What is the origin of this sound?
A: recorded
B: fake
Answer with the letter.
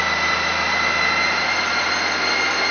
A